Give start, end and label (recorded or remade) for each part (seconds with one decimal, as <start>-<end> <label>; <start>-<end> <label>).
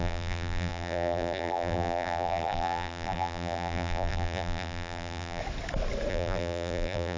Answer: 0.0-5.4 remade; 5.4-6.1 recorded; 6.1-7.2 remade